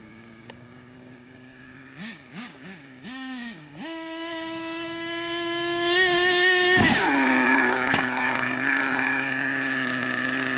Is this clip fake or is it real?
fake